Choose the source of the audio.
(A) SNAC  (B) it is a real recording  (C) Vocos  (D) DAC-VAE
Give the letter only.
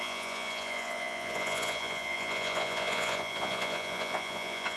C